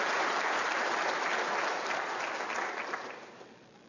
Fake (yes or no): no